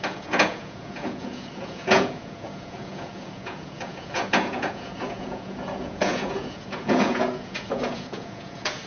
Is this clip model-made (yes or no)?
yes